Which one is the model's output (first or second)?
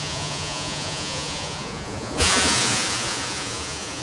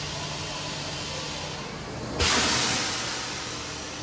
first